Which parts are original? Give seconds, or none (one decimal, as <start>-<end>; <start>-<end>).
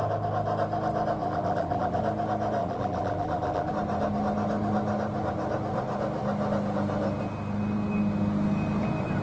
0.0-1.2; 2.0-2.6; 3.7-9.2